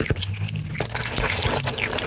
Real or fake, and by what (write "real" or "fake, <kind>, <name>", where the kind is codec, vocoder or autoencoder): real